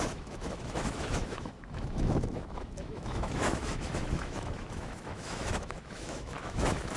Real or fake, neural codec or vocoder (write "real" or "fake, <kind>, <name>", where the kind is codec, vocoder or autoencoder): fake, autoencoder, DAC-VAE